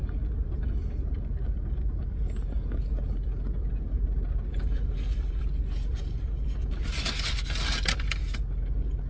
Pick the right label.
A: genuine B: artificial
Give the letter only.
A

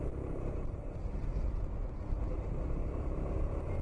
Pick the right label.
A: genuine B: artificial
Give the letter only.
A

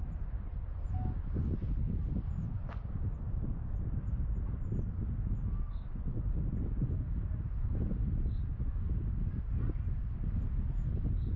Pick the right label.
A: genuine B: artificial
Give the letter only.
A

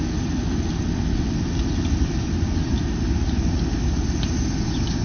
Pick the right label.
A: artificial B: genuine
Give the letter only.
B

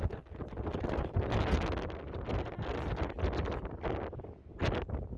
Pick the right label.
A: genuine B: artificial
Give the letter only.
A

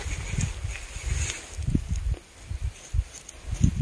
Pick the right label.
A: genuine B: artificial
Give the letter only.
A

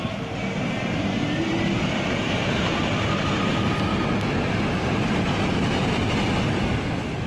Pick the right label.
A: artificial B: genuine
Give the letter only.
B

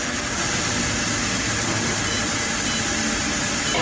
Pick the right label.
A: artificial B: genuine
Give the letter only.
B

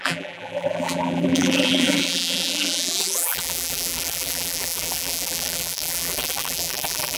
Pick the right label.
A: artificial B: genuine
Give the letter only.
A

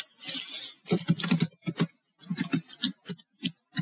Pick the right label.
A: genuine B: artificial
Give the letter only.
A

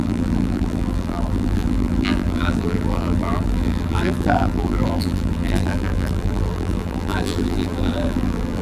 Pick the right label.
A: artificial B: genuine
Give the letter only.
A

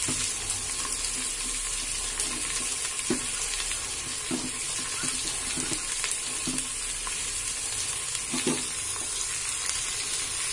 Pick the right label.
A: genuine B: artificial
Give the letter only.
A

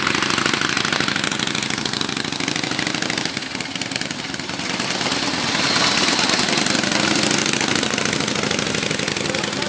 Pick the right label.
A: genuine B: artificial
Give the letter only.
A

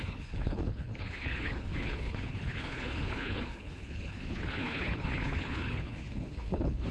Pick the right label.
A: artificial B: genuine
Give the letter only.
A